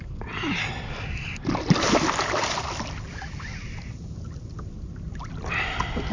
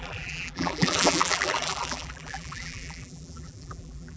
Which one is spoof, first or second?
second